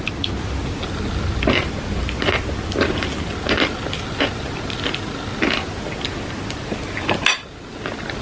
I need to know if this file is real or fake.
real